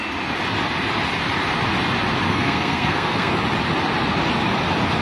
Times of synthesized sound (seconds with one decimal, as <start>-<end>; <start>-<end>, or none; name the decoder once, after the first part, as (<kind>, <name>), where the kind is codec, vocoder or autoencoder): 2.3-3.3 (codec, SNAC)